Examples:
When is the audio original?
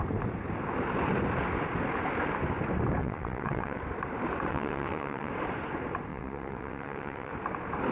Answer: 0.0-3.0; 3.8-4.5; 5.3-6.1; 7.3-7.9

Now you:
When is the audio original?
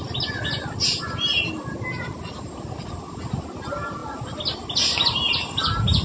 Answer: 0.0-6.0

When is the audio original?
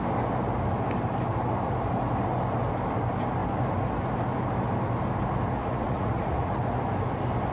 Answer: 0.0-5.6; 6.6-7.5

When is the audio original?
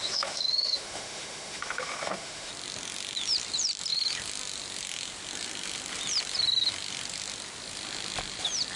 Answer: 2.5-8.8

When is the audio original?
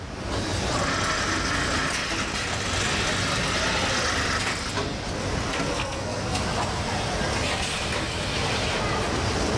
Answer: 0.0-5.5; 6.4-9.6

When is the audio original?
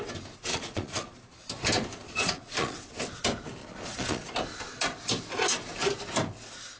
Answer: 0.0-0.5; 1.5-2.0; 3.0-3.6; 4.2-6.8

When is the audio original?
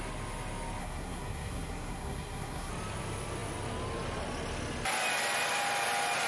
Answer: 0.0-0.8; 2.7-6.3